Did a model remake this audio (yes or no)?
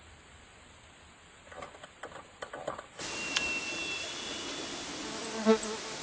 no